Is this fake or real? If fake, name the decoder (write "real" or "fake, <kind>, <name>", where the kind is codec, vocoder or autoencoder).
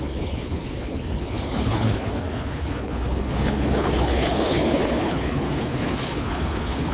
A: fake, codec, HILCodec